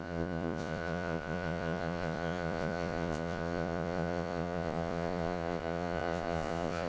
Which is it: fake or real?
fake